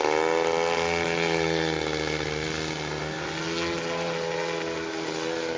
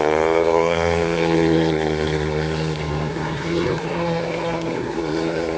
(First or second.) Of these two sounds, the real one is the first